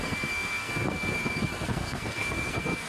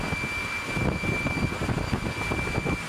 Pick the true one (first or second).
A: second